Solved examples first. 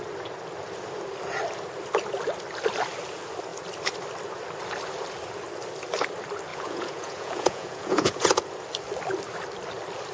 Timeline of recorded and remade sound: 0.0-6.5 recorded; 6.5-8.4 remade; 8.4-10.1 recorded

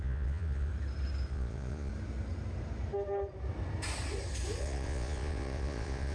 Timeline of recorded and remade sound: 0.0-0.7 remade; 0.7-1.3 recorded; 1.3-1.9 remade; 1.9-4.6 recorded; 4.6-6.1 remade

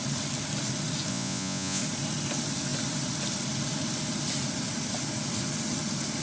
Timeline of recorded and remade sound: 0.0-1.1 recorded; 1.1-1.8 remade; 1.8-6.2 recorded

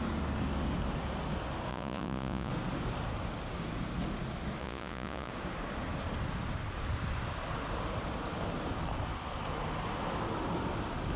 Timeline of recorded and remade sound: 0.0-1.7 recorded; 1.7-2.5 remade; 2.5-4.6 recorded; 4.6-5.3 remade; 5.3-11.2 recorded